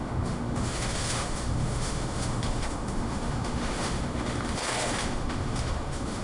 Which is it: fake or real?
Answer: fake